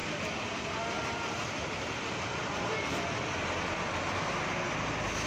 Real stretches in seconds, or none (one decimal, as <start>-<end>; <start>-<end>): 0.0-5.3